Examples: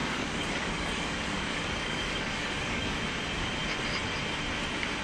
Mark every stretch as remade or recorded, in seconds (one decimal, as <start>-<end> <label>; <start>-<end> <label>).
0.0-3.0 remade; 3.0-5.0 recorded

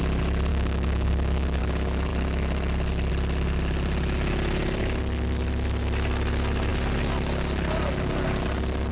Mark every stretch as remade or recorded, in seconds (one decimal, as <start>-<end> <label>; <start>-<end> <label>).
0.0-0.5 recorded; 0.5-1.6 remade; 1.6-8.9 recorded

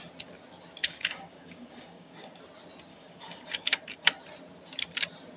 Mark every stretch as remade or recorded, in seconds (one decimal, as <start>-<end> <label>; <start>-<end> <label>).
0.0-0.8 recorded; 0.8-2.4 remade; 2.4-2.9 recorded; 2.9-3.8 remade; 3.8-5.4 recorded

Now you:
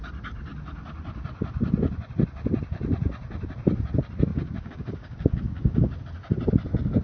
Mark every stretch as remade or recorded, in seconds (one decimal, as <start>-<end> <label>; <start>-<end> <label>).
0.0-4.3 recorded; 4.3-6.0 remade; 6.0-7.0 recorded